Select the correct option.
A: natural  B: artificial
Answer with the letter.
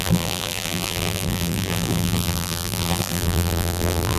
B